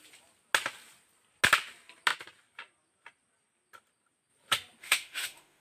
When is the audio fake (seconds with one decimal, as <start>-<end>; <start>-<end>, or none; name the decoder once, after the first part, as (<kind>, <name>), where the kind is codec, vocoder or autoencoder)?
4.8-5.6 (autoencoder, DAC-VAE)